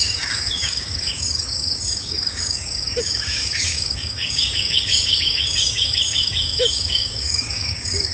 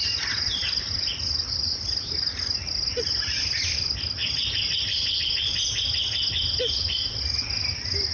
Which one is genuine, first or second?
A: second